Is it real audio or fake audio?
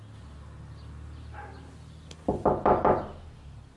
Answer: real